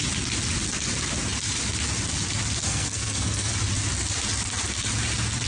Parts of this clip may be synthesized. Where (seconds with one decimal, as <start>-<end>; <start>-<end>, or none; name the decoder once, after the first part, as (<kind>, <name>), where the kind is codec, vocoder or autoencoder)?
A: 2.6-3.5 (codec, SNAC)